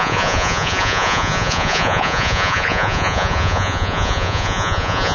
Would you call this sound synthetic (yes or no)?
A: yes